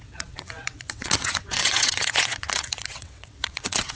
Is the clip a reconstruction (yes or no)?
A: yes